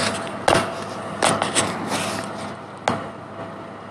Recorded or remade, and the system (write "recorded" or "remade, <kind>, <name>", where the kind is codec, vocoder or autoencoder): recorded